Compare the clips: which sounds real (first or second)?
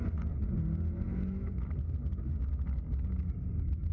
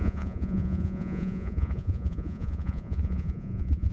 first